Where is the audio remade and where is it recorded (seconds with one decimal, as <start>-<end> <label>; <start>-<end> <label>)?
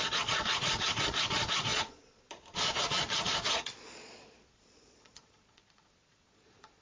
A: 0.0-6.8 remade